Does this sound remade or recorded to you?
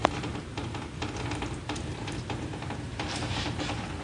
remade